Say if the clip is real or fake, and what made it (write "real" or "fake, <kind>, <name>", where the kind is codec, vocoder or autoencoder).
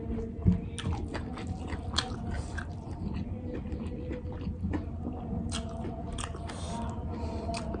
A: real